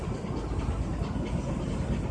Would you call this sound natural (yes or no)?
yes